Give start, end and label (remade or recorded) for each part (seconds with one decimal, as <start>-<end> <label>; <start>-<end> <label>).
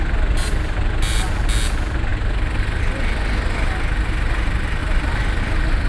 0.0-4.8 recorded; 4.8-5.4 remade; 5.4-5.9 recorded